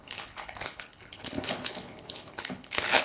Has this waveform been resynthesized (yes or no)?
yes